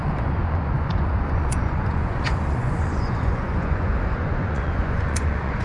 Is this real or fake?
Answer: fake